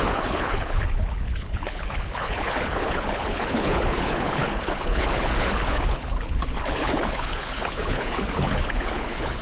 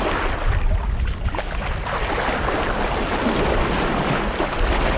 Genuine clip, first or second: second